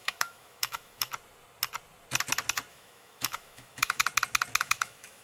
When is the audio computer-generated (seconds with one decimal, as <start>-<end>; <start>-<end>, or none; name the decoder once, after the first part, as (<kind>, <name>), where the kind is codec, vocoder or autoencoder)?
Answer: 0.0-1.1 (autoencoder, DAC-VAE); 2.7-4.0; 4.6-5.2

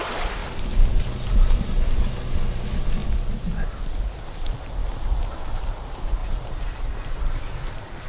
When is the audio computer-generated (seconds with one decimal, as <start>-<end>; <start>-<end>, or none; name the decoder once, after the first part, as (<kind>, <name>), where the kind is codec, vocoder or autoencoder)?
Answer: none

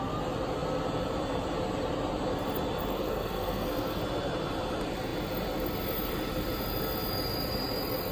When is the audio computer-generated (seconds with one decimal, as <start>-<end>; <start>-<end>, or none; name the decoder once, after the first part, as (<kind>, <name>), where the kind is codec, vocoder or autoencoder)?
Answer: 2.9-4.0 (codec, SNAC)

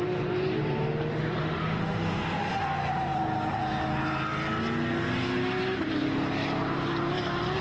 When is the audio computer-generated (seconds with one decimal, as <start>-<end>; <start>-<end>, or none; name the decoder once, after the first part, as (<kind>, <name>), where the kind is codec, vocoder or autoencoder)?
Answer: 1.4-2.6 (autoencoder, DAC-VAE)

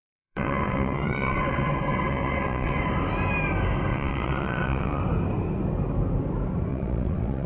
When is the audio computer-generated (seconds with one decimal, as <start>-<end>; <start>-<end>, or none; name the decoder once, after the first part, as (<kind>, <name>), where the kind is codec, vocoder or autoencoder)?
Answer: 0.0-2.8 (vocoder, WaveNeXt); 3.9-5.0; 6.7-7.5

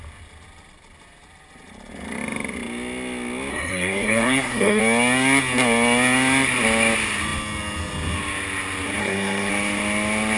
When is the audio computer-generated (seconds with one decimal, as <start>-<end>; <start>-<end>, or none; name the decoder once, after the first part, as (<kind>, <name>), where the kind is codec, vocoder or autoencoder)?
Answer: 3.5-4.8 (codec, SNAC); 9.0-9.5